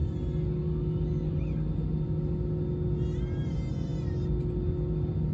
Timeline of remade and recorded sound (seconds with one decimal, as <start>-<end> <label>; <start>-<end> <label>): 0.0-5.3 recorded